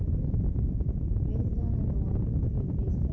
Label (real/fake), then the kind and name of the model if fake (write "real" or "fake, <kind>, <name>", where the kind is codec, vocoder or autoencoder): fake, vocoder, BigVGAN v2